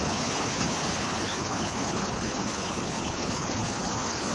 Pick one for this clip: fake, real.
fake